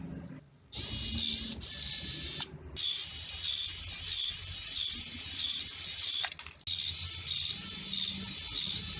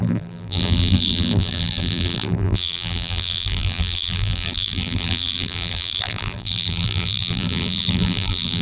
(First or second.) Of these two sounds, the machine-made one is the second